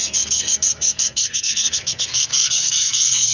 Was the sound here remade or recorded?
remade